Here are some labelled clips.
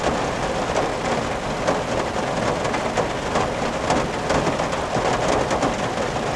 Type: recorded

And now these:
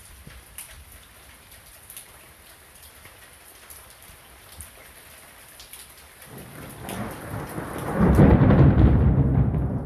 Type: remade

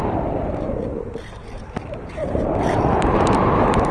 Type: remade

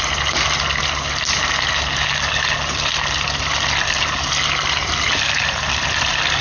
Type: recorded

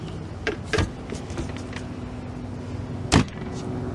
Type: recorded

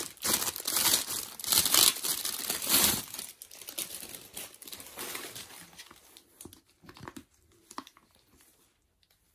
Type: remade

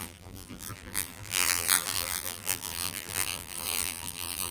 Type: remade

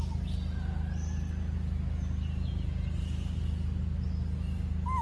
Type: recorded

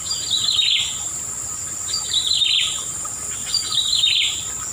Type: recorded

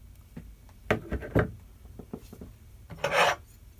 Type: recorded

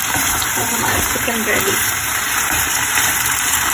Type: remade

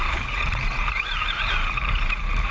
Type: remade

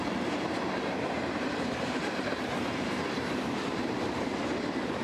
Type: remade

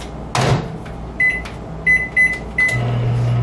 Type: recorded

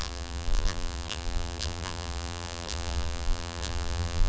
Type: remade